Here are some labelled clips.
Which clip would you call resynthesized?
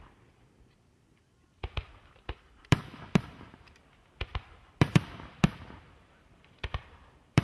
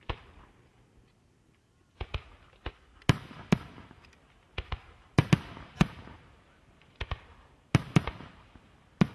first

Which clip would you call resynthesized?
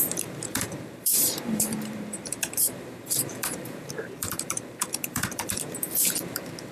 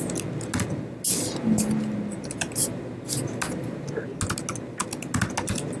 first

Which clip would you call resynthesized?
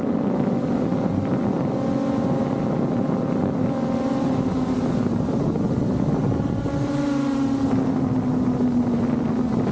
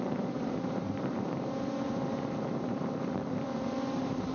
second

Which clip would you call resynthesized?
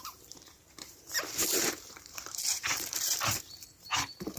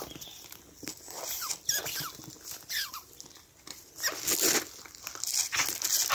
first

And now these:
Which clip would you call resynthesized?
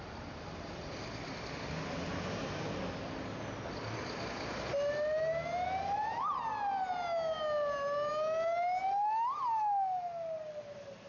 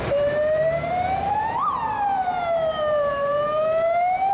second